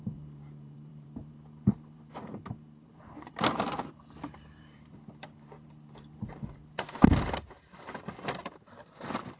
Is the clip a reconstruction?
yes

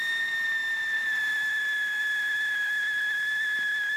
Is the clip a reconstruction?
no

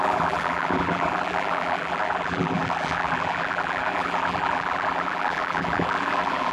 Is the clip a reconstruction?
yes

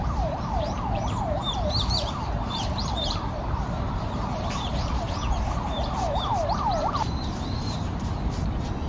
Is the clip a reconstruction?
yes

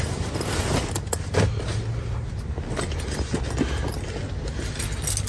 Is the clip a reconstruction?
no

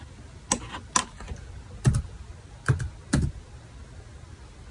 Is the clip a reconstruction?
no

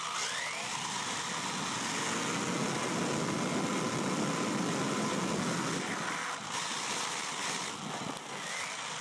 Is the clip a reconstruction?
no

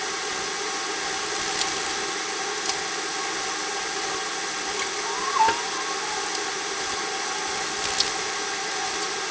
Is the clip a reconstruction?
no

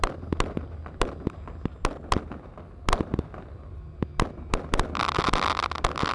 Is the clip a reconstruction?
no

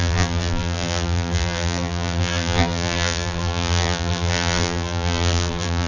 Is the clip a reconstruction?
yes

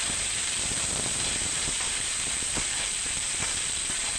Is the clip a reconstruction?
yes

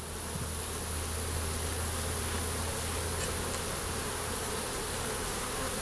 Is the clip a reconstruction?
no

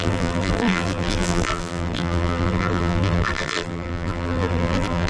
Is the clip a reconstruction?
yes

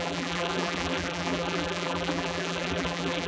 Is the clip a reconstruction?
yes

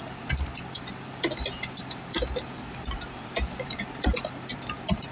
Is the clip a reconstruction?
yes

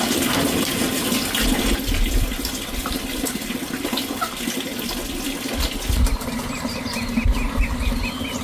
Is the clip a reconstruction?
no